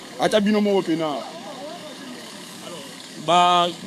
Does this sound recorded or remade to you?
remade